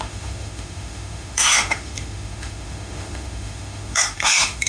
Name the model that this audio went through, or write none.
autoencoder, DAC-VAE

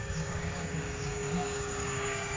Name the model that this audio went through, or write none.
codec, DAC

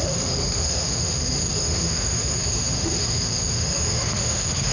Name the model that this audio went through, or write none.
autoencoder, DAC-VAE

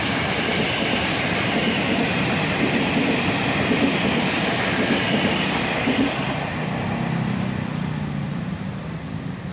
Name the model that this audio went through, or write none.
none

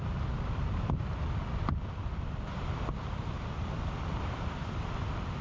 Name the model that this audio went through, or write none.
none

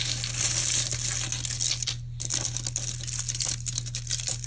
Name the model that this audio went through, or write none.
none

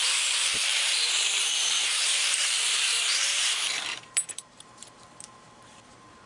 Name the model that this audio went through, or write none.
vocoder, BigVGAN v2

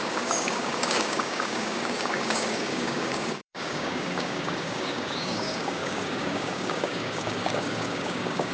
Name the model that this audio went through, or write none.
codec, DAC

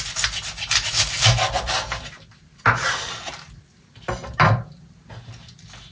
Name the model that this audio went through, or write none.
none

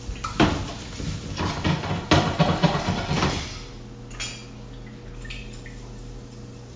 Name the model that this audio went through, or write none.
none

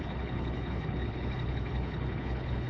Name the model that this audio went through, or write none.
codec, HILCodec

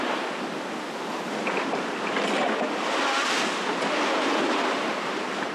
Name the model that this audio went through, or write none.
none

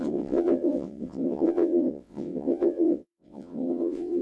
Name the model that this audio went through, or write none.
vocoder, WaveNeXt